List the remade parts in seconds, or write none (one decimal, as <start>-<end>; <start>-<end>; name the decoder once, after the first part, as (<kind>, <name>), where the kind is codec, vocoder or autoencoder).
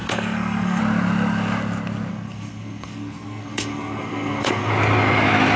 0.0-0.8 (codec, SNAC); 2.1-4.7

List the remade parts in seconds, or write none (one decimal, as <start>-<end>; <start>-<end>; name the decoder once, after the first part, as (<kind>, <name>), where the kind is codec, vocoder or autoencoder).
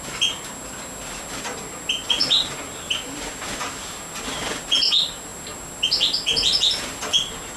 none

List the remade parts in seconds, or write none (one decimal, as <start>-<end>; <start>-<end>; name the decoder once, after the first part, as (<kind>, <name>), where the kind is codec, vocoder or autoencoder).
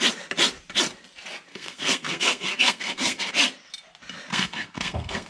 1.5-3.3 (codec, SNAC); 4.3-5.3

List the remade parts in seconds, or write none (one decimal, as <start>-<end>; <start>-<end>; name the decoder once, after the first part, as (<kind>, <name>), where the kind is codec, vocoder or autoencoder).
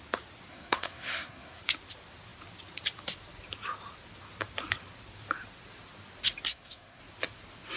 0.5-1.6 (codec, SNAC); 6.5-7.0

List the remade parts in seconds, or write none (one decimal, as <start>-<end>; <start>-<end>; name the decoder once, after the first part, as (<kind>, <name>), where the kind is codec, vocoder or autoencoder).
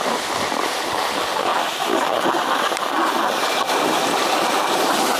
none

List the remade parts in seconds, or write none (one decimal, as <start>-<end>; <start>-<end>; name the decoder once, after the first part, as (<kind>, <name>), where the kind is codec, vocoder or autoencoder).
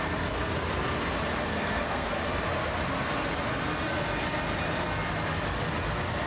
1.5-2.1 (codec, SNAC)